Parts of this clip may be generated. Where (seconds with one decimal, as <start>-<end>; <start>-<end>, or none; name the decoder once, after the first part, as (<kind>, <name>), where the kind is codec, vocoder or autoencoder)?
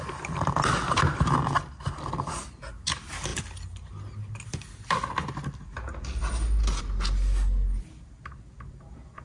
none